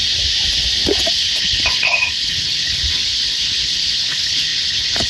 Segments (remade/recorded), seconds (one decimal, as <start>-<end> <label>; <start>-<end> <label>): 0.0-1.1 recorded; 1.1-5.1 remade